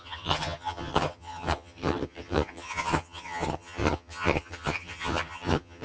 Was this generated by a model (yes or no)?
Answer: yes